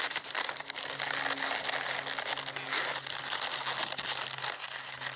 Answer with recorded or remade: recorded